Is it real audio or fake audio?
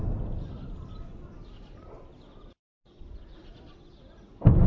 real